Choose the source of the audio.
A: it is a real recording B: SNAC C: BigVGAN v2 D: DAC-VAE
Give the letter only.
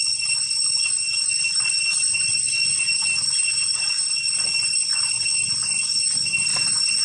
A